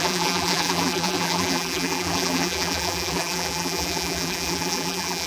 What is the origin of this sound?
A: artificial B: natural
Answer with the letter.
A